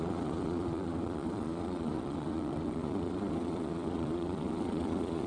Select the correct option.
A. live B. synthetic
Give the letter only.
B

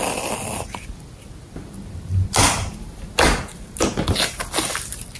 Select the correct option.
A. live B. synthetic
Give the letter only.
A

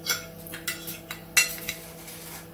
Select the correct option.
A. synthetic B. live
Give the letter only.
B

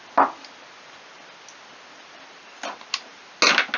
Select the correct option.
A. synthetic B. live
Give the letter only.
B